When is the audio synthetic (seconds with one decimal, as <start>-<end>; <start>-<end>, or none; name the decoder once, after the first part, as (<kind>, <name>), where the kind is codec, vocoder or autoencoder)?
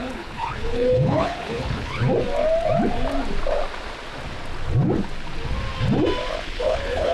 0.0-2.0 (codec, HILCodec); 6.3-7.1